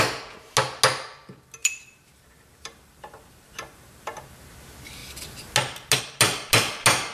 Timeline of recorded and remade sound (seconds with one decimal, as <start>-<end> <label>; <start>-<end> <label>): 0.0-1.6 recorded; 1.6-4.2 remade; 4.2-7.1 recorded